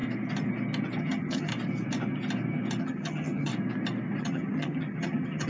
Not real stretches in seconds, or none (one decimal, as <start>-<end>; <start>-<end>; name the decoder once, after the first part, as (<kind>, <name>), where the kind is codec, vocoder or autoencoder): 1.0-1.5 (vocoder, HiFi-GAN); 2.8-3.5; 4.2-5.5